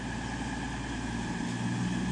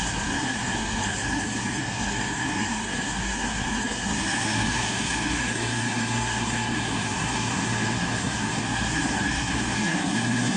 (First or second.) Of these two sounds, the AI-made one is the second